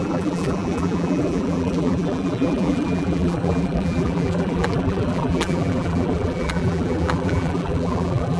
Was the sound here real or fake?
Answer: fake